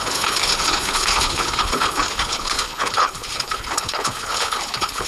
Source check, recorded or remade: remade